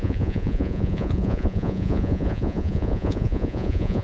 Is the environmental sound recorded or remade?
remade